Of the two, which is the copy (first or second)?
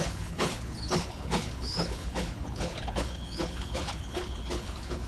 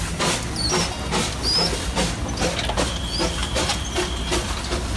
first